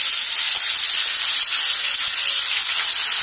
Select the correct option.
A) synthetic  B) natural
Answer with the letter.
B